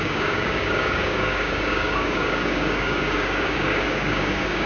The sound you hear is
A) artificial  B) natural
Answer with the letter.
A